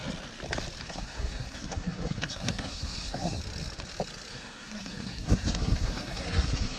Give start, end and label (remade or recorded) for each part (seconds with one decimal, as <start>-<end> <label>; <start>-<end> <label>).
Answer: 0.0-0.9 recorded; 0.9-3.4 remade; 3.4-4.3 recorded; 4.3-6.8 remade